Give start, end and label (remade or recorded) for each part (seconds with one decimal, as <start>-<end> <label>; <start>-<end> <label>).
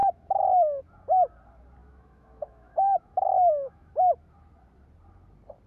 0.0-0.8 remade; 0.8-1.8 recorded; 1.8-3.9 remade; 3.9-5.7 recorded